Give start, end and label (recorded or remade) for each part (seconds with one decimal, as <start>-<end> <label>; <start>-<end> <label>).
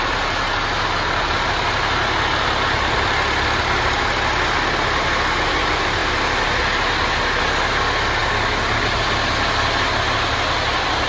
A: 0.0-11.1 recorded